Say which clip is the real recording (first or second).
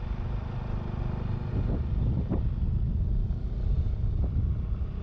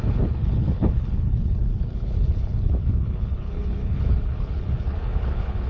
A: first